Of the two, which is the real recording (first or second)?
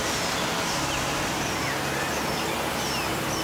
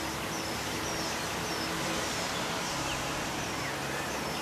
first